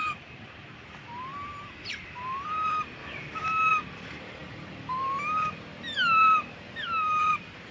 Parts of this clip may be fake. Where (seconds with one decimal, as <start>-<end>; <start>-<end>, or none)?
0.0-1.3; 1.9-3.0; 3.7-4.4; 7.3-7.7

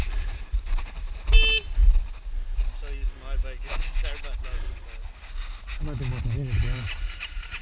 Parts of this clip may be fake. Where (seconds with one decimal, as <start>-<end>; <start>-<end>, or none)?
0.0-1.8; 6.2-7.6